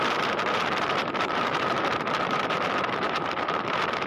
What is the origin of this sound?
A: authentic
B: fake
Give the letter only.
B